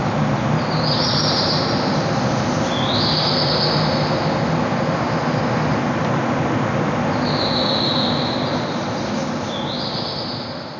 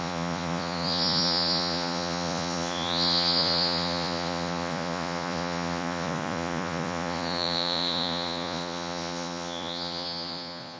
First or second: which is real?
first